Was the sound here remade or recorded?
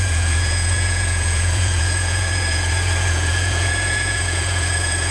remade